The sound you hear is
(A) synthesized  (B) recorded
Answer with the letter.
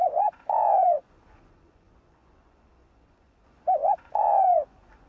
A